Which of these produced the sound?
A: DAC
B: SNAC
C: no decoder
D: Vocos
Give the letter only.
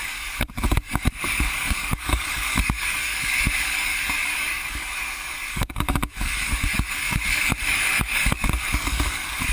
A